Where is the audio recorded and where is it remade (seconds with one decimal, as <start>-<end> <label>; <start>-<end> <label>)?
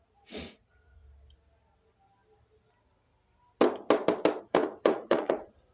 0.0-1.0 remade; 1.0-4.4 recorded; 4.4-5.7 remade